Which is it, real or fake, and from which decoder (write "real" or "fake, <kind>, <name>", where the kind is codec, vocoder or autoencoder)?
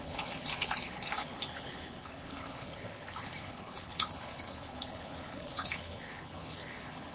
fake, codec, HILCodec